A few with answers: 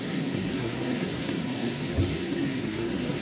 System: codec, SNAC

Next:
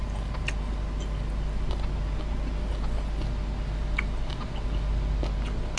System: none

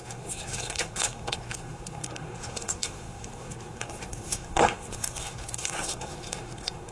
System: codec, SNAC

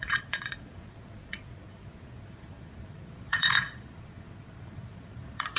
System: vocoder, Vocos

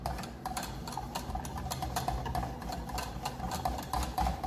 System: none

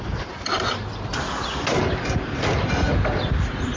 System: none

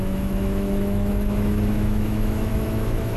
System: autoencoder, DAC-VAE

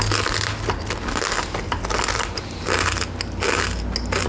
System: none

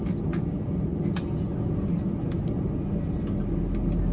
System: none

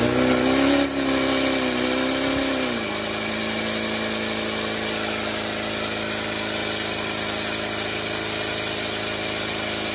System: none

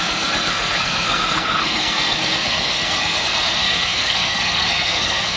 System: codec, SNAC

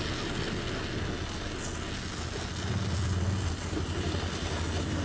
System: none